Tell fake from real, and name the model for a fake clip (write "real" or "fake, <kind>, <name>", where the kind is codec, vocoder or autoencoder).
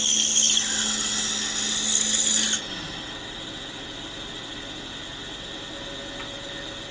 real